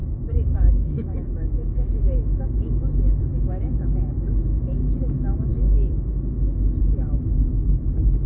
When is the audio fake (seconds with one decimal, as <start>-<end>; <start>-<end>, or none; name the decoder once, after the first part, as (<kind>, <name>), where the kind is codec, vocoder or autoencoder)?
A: 0.0-8.3 (autoencoder, DAC-VAE)